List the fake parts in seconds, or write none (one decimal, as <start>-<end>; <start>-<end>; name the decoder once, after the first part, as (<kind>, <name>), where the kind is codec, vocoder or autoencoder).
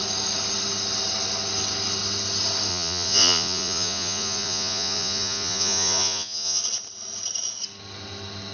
2.7-6.6 (vocoder, Vocos)